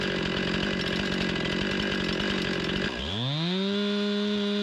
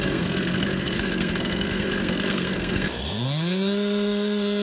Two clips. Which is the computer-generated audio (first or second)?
second